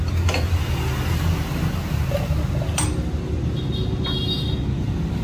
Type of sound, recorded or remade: recorded